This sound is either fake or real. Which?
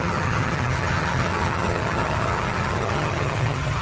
fake